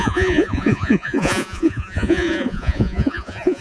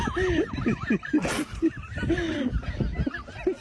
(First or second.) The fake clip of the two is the first